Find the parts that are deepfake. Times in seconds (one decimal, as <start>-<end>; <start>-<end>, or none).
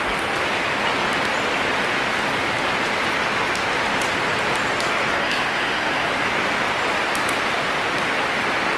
5.1-6.1